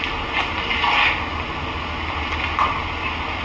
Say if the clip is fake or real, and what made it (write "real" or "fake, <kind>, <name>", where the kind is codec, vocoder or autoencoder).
real